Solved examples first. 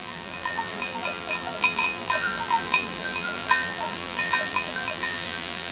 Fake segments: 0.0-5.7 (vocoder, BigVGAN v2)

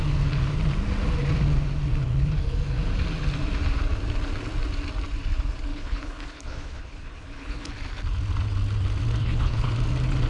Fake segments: 5.7-7.7 (codec, HILCodec); 9.2-9.7

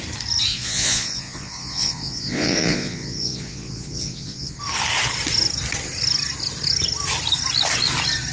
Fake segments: 0.5-4.6 (vocoder, Vocos)

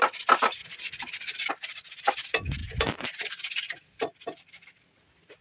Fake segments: none

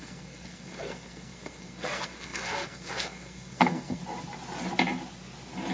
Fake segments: 0.0-4.0 (codec, SNAC)

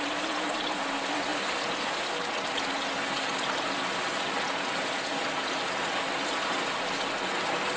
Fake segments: none

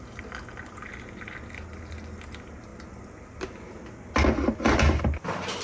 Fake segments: none